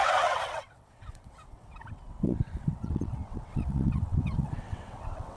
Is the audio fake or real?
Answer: fake